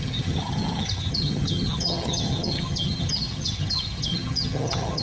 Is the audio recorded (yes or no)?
no